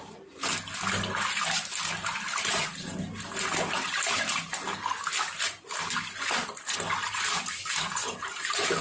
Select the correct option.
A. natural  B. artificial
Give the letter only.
A